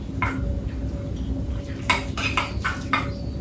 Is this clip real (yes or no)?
yes